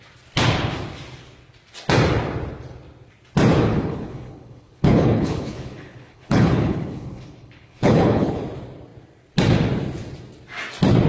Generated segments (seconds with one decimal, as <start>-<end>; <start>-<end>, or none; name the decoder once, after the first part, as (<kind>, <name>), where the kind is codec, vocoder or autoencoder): 3.7-8.4 (codec, HILCodec)